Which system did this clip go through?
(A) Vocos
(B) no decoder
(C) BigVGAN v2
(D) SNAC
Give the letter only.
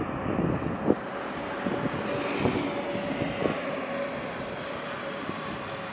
B